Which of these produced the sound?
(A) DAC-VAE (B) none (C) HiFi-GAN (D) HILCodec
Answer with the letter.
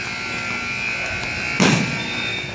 B